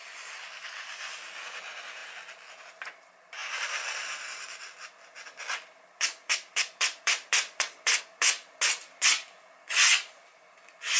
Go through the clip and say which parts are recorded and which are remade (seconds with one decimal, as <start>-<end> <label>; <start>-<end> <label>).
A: 0.0-3.4 recorded; 3.4-8.0 remade; 8.0-11.0 recorded